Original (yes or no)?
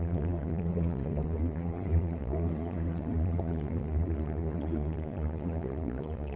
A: no